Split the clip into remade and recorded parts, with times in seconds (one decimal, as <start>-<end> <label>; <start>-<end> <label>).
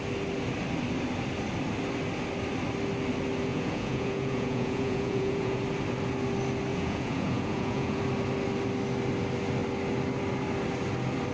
0.0-3.5 recorded; 3.5-5.6 remade; 5.6-6.7 recorded; 6.7-8.0 remade; 8.0-11.3 recorded